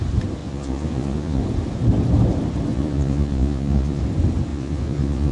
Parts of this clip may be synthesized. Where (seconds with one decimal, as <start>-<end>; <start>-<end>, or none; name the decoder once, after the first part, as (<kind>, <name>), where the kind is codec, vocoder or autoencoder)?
0.4-1.4 (vocoder, Vocos); 2.7-4.0; 4.5-5.3